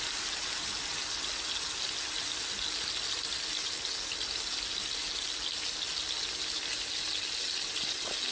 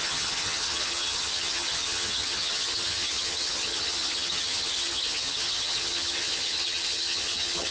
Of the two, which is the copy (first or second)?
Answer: second